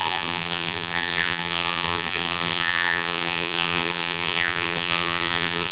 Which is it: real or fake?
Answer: fake